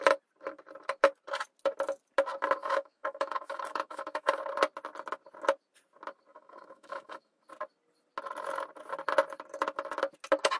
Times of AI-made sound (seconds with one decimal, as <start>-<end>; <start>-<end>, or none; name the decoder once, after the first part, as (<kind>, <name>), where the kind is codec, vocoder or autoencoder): 2.6-4.4 (autoencoder, DAC-VAE); 6.3-7.4